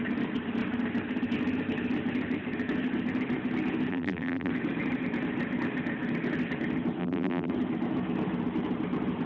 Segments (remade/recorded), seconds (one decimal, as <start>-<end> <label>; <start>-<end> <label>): 0.0-3.9 recorded; 3.9-4.5 remade; 4.5-7.0 recorded; 7.0-7.5 remade; 7.5-9.3 recorded